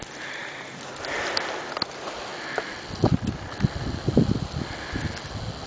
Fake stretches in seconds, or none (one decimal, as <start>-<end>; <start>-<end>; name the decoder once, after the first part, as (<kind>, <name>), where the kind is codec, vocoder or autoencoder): none